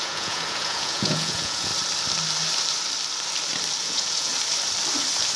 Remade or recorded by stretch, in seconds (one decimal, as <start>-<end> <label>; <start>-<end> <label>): 0.0-1.7 remade; 1.7-3.8 recorded; 3.8-4.3 remade; 4.3-5.4 recorded